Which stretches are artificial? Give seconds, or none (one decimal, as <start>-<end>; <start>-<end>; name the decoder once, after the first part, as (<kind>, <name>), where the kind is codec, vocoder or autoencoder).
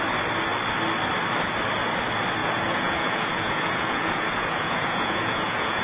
2.4-5.8 (vocoder, Vocos)